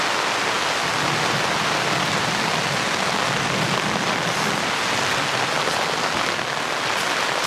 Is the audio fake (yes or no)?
no